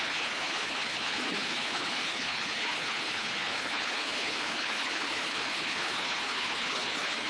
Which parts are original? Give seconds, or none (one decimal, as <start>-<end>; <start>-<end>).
none